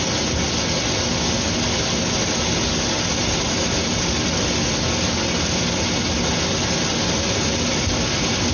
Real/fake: real